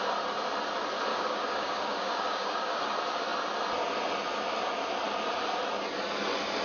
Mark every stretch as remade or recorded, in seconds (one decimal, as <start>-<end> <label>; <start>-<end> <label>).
0.0-1.1 recorded; 1.1-2.8 remade; 2.8-6.6 recorded